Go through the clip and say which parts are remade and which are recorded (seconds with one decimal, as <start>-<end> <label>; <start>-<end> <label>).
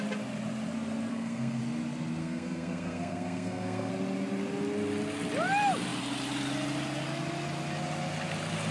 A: 0.0-1.1 recorded; 1.1-1.6 remade; 1.6-2.2 recorded; 2.2-3.9 remade; 3.9-8.7 recorded